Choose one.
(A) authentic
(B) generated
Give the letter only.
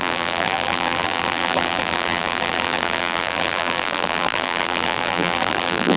B